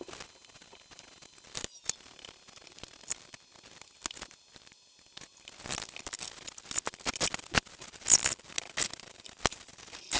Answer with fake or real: real